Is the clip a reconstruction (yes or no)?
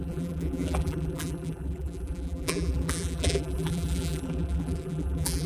yes